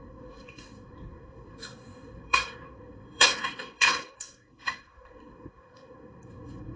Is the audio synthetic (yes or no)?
yes